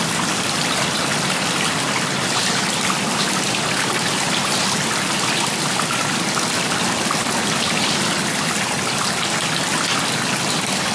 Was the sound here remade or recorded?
recorded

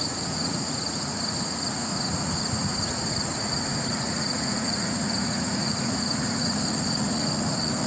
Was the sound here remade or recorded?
remade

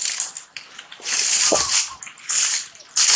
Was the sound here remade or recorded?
recorded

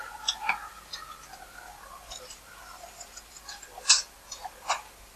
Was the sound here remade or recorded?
remade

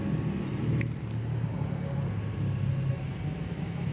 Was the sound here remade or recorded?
recorded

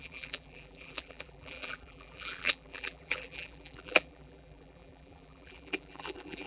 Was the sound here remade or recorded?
remade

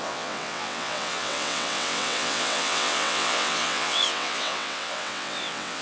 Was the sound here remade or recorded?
remade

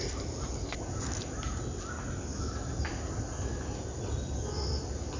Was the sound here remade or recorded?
recorded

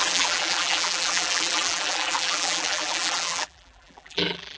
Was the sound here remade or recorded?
remade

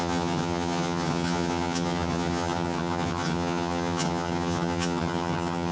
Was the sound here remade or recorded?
remade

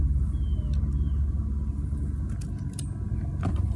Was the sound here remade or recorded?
recorded